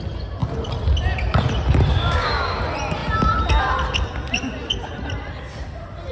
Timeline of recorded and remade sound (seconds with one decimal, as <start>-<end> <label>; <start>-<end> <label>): 0.0-1.9 recorded; 1.9-2.6 remade; 2.6-6.1 recorded